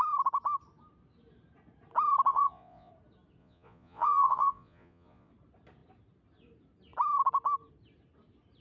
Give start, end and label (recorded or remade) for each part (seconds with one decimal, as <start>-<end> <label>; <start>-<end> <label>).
0.0-2.3 recorded; 2.3-2.9 remade; 2.9-3.4 recorded; 3.4-5.3 remade; 5.3-8.6 recorded